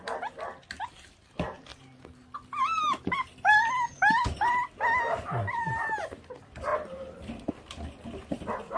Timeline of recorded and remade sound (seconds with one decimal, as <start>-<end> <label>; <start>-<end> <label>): 0.0-8.8 recorded